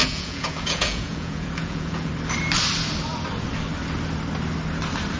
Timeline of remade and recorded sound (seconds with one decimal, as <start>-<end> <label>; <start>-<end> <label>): 0.0-2.1 remade; 2.1-5.2 recorded